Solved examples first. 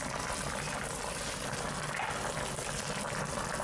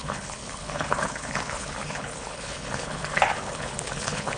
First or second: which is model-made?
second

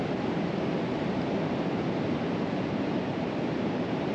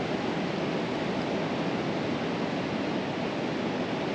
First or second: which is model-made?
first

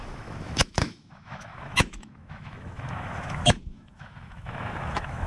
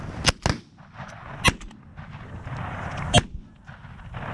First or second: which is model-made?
first